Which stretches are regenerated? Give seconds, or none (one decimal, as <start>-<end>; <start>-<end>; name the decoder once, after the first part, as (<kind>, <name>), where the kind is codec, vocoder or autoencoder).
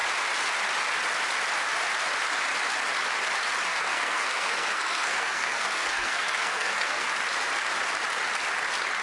3.7-7.1 (codec, SNAC)